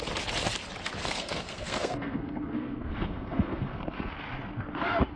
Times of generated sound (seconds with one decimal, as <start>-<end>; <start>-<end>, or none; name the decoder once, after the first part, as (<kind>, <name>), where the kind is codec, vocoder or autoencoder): 1.0-4.1 (codec, SNAC)